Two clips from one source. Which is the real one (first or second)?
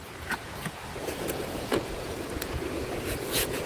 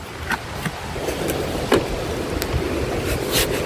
second